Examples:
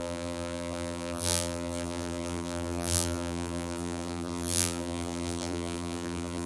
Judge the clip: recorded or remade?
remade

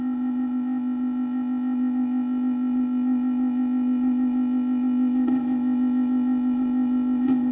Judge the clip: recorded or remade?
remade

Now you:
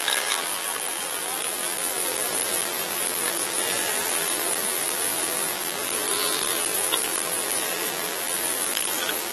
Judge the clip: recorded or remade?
remade